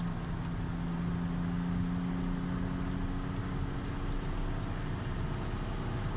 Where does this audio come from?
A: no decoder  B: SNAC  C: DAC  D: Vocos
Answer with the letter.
A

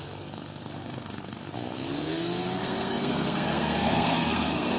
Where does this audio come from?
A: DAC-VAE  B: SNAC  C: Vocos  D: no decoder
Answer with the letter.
B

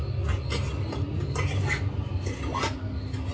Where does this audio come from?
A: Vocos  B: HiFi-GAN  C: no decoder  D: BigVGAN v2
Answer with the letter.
C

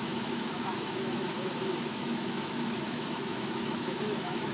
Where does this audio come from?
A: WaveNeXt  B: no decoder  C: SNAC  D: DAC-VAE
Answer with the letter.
D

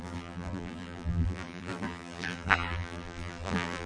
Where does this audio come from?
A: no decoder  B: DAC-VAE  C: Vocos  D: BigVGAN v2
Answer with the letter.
D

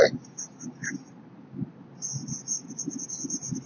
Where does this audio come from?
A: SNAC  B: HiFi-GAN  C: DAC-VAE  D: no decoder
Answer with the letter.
D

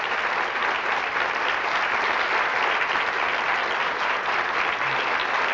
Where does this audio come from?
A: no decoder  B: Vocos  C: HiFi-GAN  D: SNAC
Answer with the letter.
A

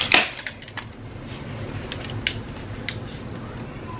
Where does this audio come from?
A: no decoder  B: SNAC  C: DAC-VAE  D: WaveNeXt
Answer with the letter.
A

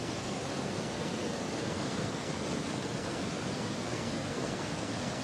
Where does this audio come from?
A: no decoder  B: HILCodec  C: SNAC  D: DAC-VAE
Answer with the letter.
C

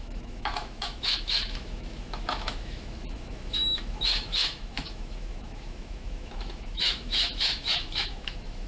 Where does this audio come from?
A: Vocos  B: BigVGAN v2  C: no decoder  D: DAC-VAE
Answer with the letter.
D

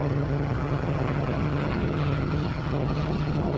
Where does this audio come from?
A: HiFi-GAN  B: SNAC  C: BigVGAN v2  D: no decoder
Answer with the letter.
A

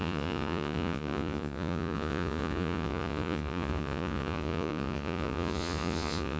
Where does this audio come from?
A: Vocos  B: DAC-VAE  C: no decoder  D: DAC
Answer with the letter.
A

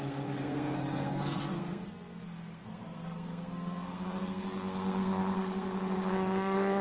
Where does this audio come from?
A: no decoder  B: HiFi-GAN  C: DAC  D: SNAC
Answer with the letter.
D